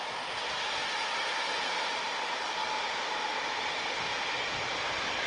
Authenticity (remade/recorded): recorded